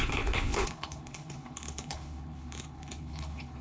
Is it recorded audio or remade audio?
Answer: remade